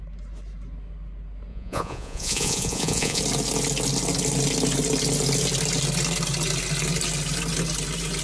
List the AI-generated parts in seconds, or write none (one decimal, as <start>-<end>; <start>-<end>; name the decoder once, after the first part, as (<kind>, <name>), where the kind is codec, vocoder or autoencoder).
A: 1.5-3.2 (vocoder, Vocos)